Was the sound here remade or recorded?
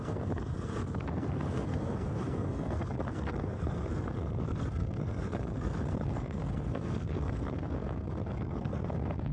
remade